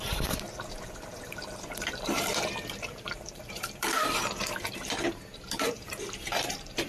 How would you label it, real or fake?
fake